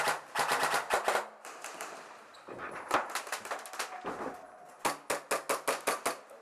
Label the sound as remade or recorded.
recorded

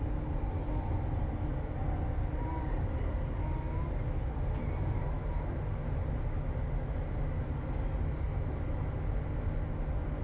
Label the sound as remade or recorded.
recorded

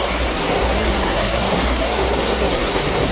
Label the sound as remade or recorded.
remade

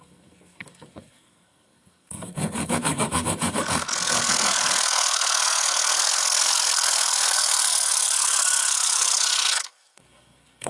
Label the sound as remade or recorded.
remade